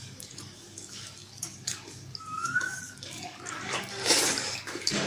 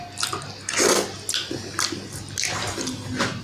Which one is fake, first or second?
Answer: first